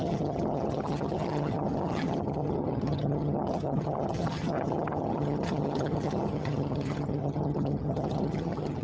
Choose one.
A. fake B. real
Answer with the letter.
A